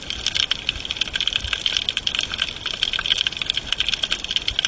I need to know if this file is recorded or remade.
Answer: recorded